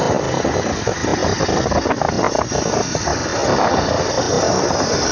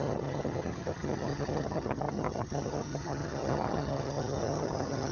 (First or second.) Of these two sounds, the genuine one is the first